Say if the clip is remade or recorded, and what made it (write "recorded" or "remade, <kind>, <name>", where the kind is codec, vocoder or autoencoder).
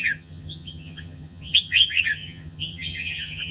remade, vocoder, HiFi-GAN